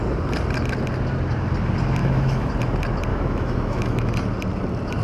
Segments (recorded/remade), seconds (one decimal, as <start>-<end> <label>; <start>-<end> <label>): 0.0-2.0 recorded; 2.0-2.5 remade; 2.5-3.1 recorded; 3.1-4.1 remade; 4.1-5.0 recorded